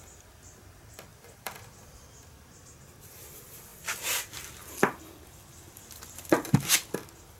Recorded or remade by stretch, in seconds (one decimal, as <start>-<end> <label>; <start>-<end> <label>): 0.0-1.1 recorded; 1.1-2.5 remade; 2.5-7.4 recorded